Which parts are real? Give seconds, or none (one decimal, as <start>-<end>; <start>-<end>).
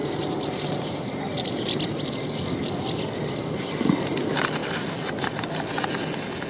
0.0-6.5